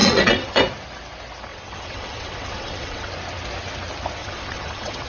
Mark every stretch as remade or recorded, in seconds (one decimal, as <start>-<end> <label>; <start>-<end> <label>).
0.0-0.6 remade; 0.6-1.5 recorded; 1.5-3.1 remade; 3.1-4.2 recorded; 4.2-5.1 remade